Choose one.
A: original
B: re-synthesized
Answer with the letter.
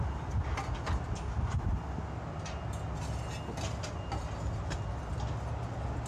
A